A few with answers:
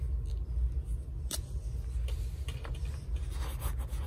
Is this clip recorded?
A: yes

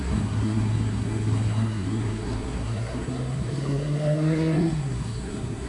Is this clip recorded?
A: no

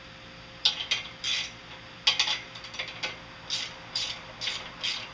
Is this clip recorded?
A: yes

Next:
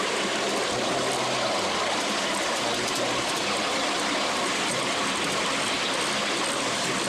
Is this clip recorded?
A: yes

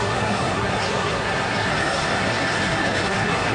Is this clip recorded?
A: no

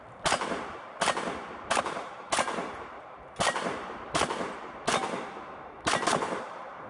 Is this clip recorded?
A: yes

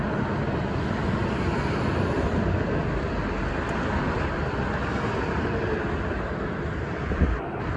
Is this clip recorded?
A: yes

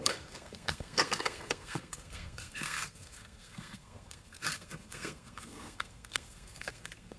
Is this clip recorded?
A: no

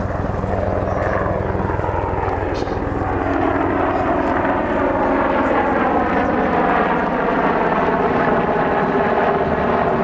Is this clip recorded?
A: yes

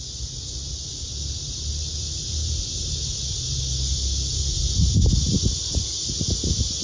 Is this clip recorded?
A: yes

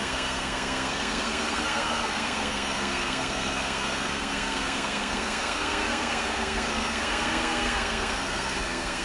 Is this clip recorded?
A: no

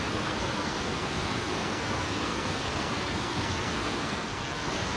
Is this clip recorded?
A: no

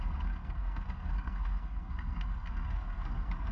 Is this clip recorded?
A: no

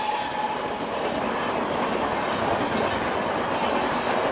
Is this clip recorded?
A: yes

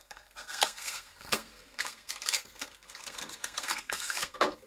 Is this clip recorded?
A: no